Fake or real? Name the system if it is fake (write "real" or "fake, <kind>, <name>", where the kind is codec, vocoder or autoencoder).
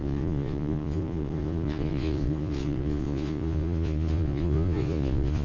fake, vocoder, Vocos